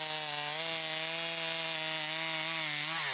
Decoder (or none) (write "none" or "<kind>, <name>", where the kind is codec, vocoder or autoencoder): none